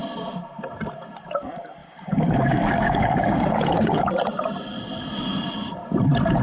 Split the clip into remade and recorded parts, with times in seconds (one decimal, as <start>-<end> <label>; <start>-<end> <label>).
0.0-1.8 recorded; 1.8-4.1 remade; 4.1-6.4 recorded